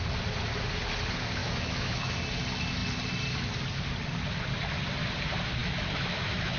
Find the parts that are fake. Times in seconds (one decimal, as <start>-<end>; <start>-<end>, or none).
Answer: 1.4-2.1; 5.6-6.6